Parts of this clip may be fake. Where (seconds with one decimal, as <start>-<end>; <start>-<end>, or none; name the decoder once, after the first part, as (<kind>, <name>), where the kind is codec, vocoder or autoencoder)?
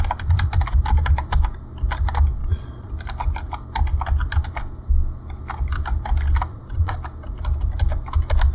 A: 2.4-2.9 (vocoder, Vocos); 6.5-7.0